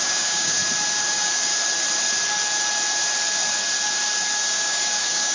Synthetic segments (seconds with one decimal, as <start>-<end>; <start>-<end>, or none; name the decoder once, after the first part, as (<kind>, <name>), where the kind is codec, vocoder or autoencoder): 0.0-0.6 (codec, DAC); 1.1-1.5; 4.4-5.3